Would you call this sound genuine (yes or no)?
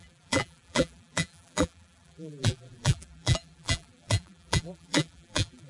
no